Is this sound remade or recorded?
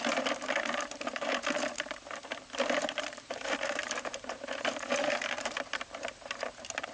remade